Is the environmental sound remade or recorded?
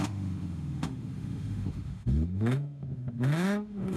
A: remade